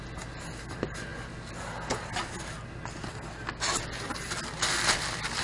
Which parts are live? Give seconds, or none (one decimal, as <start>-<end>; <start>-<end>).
0.0-5.4